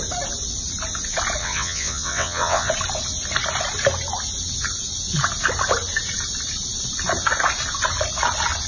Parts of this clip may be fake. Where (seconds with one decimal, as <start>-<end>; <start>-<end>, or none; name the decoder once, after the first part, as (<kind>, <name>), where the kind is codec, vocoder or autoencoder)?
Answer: 1.4-2.7 (vocoder, WaveNeXt)